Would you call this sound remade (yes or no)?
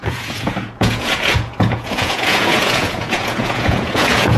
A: yes